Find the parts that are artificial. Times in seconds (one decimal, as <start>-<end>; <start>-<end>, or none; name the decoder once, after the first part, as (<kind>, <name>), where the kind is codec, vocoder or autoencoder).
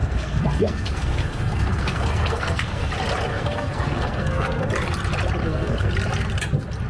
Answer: 0.0-2.9 (codec, SNAC); 3.3-4.7; 5.4-5.9